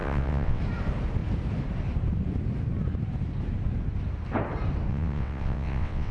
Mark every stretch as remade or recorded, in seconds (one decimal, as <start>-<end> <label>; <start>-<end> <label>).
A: 0.0-0.6 remade; 0.6-4.9 recorded; 4.9-6.1 remade